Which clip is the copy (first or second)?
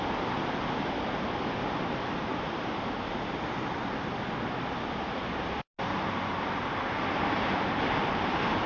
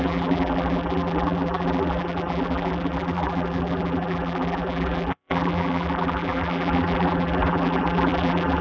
second